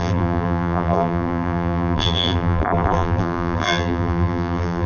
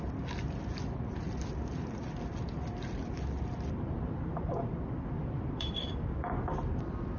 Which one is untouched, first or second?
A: second